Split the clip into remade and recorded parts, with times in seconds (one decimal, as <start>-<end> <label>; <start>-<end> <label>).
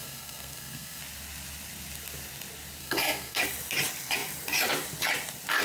0.0-1.0 remade; 1.0-2.8 recorded; 2.8-3.4 remade; 3.4-5.6 recorded